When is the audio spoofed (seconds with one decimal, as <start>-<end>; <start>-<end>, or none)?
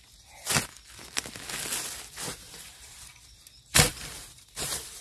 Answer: 2.3-3.1; 3.9-5.0